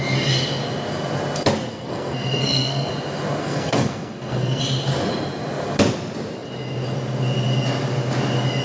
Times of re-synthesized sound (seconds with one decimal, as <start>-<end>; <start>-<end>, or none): 1.7-2.9; 3.4-4.6